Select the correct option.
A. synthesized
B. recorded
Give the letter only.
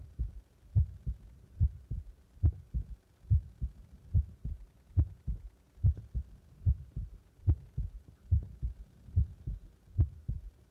B